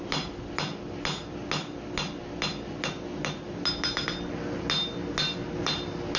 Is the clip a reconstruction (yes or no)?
no